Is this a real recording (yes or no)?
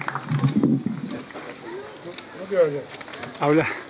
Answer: yes